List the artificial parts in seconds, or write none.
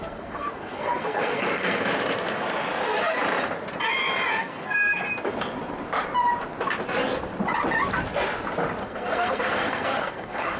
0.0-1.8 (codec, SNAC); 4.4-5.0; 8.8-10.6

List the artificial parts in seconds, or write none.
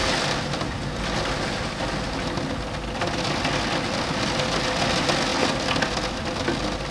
none